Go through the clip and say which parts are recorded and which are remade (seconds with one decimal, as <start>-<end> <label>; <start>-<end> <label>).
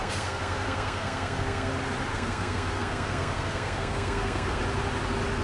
0.0-1.7 remade; 1.7-2.1 recorded; 2.1-4.6 remade; 4.6-5.4 recorded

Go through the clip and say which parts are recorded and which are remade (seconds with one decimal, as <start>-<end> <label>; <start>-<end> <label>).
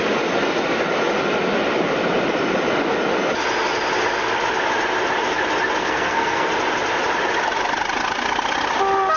0.0-5.8 recorded; 5.8-6.5 remade; 6.5-9.2 recorded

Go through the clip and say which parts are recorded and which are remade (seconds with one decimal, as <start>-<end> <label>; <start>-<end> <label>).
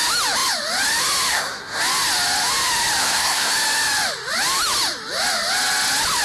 0.0-1.3 recorded; 1.3-1.8 remade; 1.8-3.0 recorded; 3.0-3.5 remade; 3.5-6.2 recorded